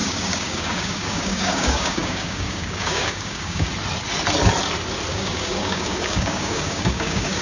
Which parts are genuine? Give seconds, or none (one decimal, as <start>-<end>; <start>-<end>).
3.7-5.1